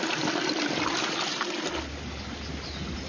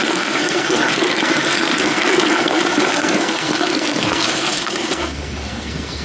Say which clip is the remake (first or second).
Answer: second